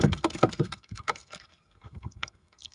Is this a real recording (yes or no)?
no